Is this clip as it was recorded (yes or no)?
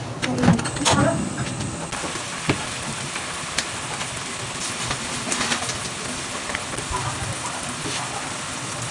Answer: yes